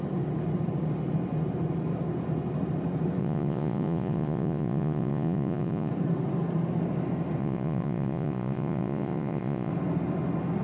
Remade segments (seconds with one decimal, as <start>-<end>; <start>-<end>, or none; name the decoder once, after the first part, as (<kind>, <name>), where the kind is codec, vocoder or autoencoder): 3.2-5.9 (vocoder, Vocos); 7.4-9.7